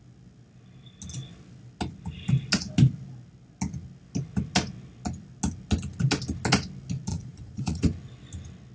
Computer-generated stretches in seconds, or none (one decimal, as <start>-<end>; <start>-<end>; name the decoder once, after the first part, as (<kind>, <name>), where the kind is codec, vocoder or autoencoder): 7.1-7.8 (vocoder, Vocos)